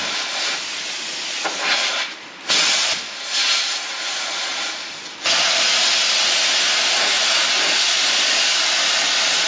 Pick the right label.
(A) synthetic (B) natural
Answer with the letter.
B